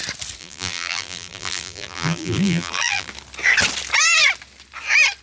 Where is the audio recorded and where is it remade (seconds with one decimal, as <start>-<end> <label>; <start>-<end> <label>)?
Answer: 0.0-0.4 recorded; 0.4-3.1 remade; 3.1-5.2 recorded